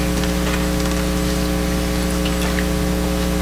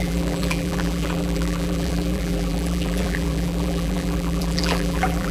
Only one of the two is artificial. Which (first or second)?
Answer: second